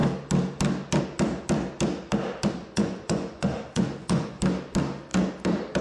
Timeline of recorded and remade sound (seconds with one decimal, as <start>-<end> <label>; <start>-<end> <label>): 0.0-2.6 recorded; 2.6-4.4 remade; 4.4-5.8 recorded